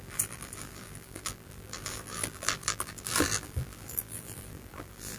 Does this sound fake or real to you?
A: fake